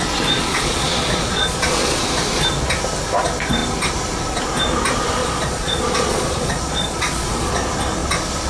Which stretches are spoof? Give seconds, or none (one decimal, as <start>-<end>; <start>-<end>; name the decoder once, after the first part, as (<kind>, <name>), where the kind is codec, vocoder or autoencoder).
0.4-2.0 (vocoder, Vocos); 5.2-7.5